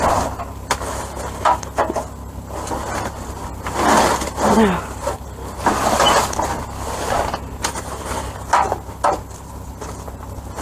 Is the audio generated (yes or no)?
no